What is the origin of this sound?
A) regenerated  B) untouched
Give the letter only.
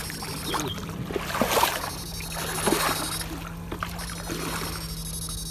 B